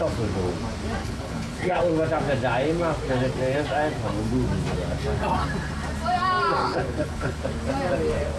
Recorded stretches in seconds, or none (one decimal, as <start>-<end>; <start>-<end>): 0.0-1.0; 1.8-6.6; 7.4-8.4